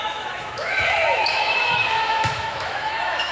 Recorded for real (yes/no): no